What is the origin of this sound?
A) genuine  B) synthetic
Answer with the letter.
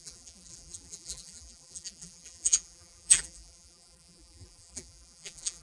B